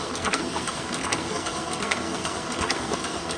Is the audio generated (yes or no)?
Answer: yes